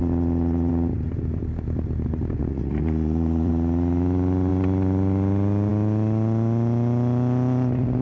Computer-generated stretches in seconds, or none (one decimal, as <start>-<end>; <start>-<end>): 2.4-3.5